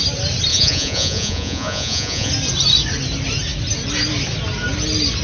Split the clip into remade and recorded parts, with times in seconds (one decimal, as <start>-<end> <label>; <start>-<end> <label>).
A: 0.0-0.5 recorded; 0.5-2.3 remade; 2.3-5.2 recorded